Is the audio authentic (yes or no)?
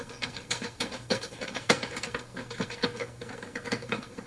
no